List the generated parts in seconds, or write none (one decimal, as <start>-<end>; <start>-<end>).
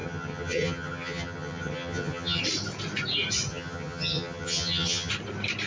0.0-2.4; 3.5-5.1